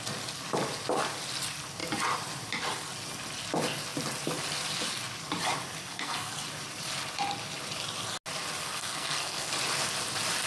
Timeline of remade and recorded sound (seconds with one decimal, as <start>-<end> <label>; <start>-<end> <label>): 0.0-5.8 recorded; 5.8-6.3 remade; 6.3-8.6 recorded; 8.6-9.5 remade; 9.5-10.5 recorded